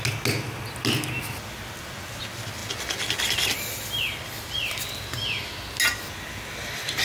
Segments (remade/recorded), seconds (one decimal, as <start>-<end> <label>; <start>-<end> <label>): 0.0-7.0 recorded